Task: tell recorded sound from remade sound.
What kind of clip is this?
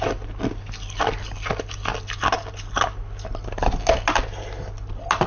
recorded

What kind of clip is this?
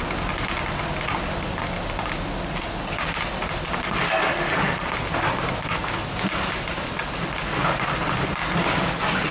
recorded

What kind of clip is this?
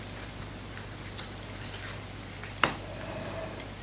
recorded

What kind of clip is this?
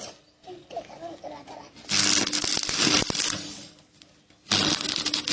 recorded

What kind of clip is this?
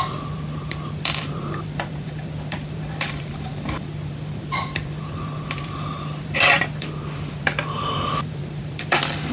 remade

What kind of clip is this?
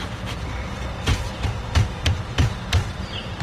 remade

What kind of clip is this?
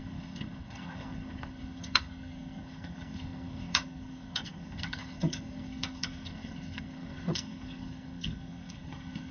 remade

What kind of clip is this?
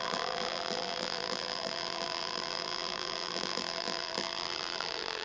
remade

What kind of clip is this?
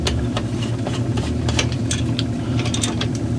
remade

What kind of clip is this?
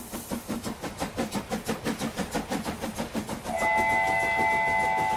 recorded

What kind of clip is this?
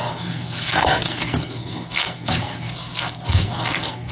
remade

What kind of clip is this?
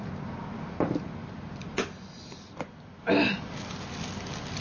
recorded